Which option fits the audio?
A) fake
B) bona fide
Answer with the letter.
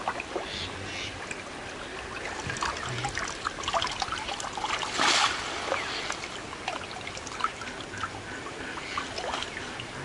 B